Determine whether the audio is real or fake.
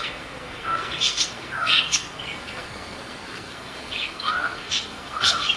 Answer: fake